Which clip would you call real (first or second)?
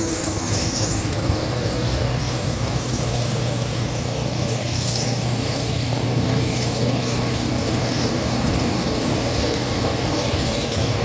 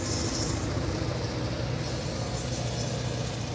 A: second